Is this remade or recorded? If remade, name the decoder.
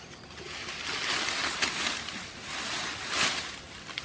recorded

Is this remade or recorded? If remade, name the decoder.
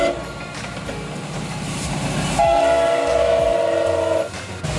remade, vocoder, BigVGAN v2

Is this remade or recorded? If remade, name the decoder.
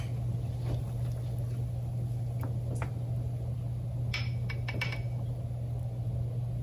recorded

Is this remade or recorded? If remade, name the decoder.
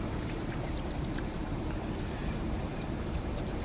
remade, vocoder, BigVGAN v2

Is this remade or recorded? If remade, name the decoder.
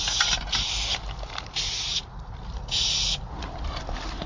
recorded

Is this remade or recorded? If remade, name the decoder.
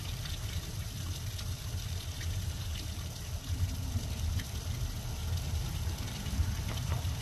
remade, vocoder, BigVGAN v2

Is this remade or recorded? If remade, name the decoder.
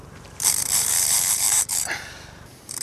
remade, vocoder, BigVGAN v2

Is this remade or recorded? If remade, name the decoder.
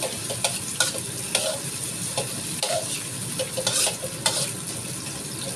recorded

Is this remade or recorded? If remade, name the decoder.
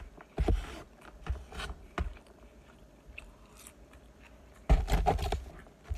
remade, vocoder, BigVGAN v2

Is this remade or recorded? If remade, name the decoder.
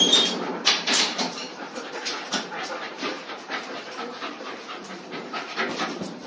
remade, vocoder, BigVGAN v2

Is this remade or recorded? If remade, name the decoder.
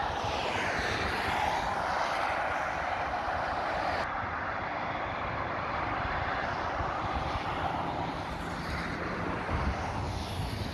recorded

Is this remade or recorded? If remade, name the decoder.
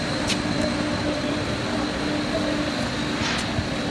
recorded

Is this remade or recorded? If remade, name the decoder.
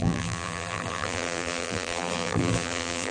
remade, vocoder, BigVGAN v2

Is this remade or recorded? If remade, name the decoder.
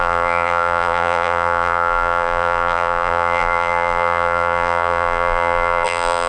remade, vocoder, BigVGAN v2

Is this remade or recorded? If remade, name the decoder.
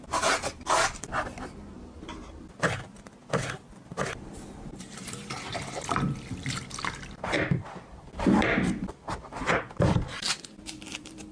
remade, vocoder, BigVGAN v2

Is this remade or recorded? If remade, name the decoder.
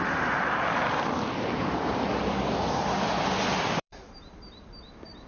remade, vocoder, BigVGAN v2